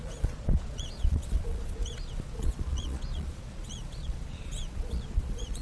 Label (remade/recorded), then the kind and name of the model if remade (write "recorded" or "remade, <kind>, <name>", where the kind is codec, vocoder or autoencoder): remade, vocoder, Vocos